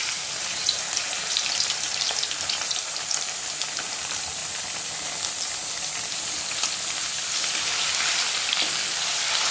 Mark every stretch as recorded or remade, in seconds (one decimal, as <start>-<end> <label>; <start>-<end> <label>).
0.0-4.4 remade; 4.4-9.1 recorded; 9.1-9.5 remade